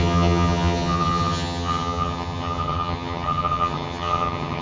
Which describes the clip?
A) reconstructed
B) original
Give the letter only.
A